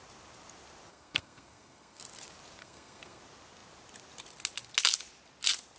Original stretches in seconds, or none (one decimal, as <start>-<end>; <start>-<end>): 0.0-0.9; 2.0-2.6; 3.2-5.8